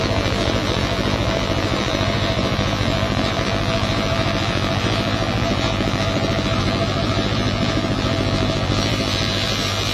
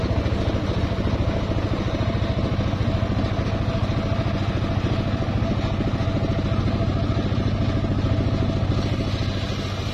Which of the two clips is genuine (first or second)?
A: second